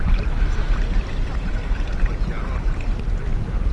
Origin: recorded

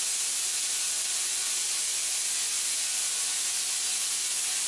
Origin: remade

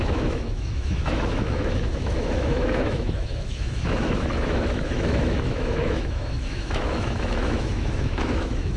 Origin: remade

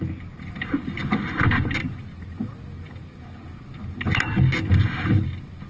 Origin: recorded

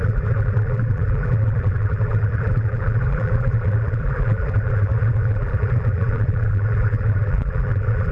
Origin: remade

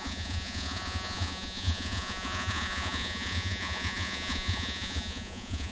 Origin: remade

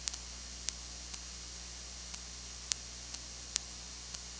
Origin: recorded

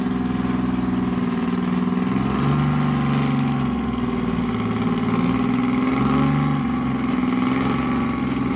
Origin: recorded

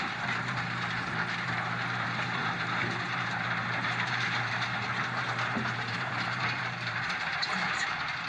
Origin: remade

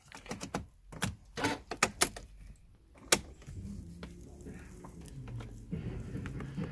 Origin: recorded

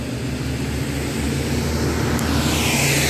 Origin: recorded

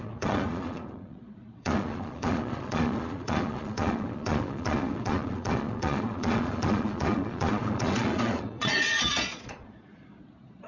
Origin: remade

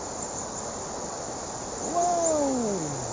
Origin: recorded